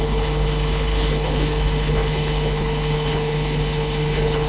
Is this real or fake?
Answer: fake